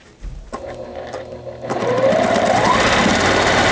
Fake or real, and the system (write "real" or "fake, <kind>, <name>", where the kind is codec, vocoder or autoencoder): fake, vocoder, BigVGAN v2